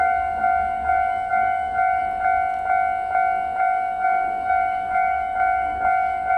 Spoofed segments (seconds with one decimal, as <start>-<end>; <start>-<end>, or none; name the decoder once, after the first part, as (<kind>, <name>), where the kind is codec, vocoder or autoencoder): 0.0-2.0 (codec, DAC); 3.6-6.4